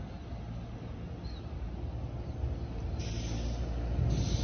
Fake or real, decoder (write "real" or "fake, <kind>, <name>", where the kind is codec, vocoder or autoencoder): real